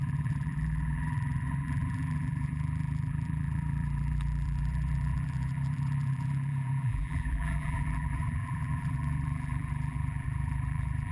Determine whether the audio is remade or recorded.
remade